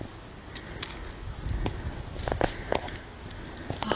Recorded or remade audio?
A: recorded